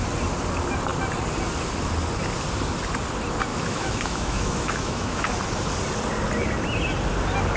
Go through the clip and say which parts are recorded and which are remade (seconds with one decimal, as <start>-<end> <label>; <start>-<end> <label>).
0.0-3.5 recorded; 3.5-5.3 remade; 5.3-7.6 recorded

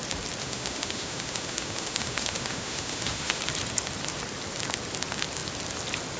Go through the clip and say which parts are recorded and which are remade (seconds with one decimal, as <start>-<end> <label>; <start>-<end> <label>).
0.0-0.4 recorded; 0.4-3.4 remade; 3.4-6.2 recorded

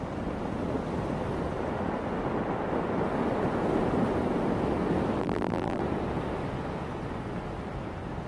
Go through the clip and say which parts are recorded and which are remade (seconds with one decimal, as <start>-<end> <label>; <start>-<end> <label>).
0.0-5.2 recorded; 5.2-5.8 remade; 5.8-8.3 recorded

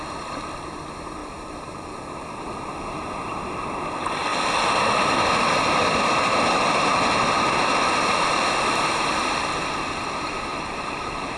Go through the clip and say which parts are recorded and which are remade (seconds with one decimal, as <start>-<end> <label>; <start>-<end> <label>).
0.0-1.2 recorded; 1.2-2.4 remade; 2.4-10.5 recorded; 10.5-11.4 remade

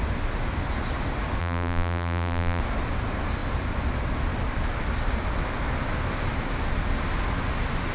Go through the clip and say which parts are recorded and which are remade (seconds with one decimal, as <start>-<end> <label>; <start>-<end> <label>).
0.0-1.4 recorded; 1.4-2.6 remade; 2.6-7.9 recorded

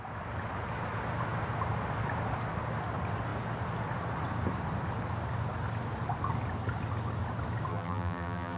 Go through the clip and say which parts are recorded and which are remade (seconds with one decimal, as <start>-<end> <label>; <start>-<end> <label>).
0.0-7.7 recorded; 7.7-8.6 remade